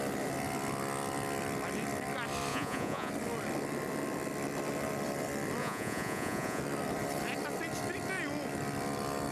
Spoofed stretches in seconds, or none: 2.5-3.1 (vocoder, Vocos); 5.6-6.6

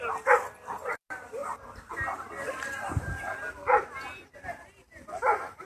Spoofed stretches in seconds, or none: none

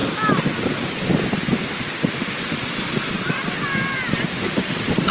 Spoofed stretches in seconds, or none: 2.1-5.1 (vocoder, BigVGAN v2)